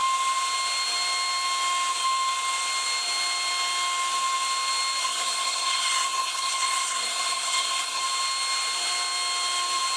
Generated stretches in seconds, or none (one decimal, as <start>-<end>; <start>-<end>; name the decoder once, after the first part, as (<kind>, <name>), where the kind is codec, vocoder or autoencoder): 5.0-8.0 (codec, SNAC)